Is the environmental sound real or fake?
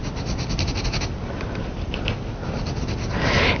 real